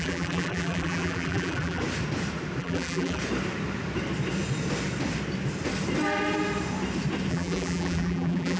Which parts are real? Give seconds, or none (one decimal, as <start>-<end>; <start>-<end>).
1.8-2.6; 3.2-7.3